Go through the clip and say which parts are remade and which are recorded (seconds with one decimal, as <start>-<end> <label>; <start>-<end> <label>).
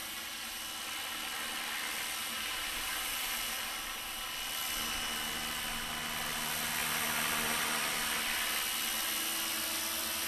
0.0-0.6 remade; 0.6-2.2 recorded; 2.2-3.7 remade; 3.7-10.3 recorded